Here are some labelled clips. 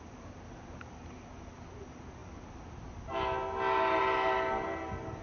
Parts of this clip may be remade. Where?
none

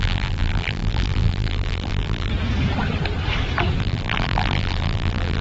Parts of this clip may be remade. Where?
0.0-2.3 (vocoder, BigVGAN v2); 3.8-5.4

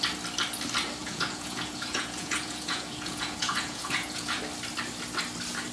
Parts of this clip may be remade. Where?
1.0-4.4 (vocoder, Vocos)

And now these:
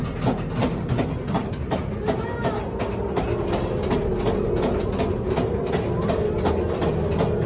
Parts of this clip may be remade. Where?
none

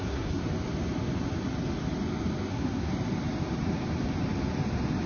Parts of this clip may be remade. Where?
0.0-0.4 (codec, SNAC); 2.5-2.9

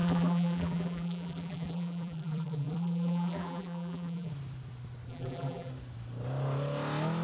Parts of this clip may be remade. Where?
0.0-4.3 (vocoder, BigVGAN v2); 5.1-5.7

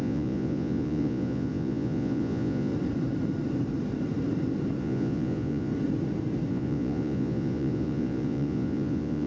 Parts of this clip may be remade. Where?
0.0-2.7 (vocoder, Vocos); 4.8-5.7; 6.5-9.3